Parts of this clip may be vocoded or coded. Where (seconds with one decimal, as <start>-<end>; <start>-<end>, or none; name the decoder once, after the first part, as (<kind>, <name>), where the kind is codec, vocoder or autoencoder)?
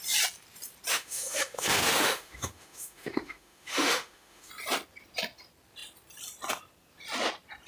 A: 0.9-4.5 (autoencoder, DAC-VAE)